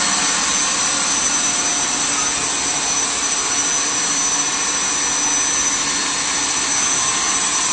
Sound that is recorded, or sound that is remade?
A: recorded